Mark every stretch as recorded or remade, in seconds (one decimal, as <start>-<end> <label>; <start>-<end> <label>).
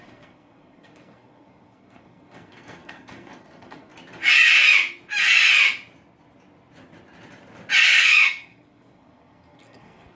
0.0-3.9 remade; 3.9-8.0 recorded; 8.0-10.1 remade